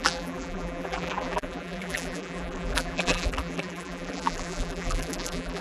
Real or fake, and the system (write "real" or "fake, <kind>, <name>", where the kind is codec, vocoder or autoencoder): fake, vocoder, BigVGAN v2